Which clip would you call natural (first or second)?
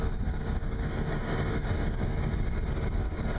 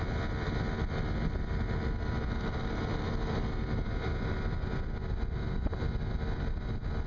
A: second